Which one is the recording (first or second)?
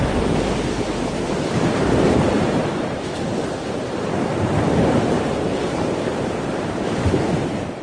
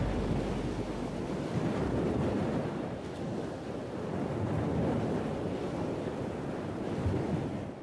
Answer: second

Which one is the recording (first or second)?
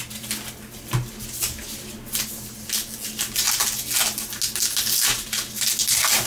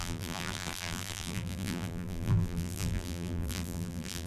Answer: first